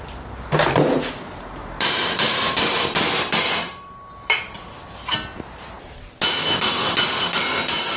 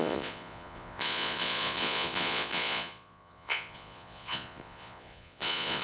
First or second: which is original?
first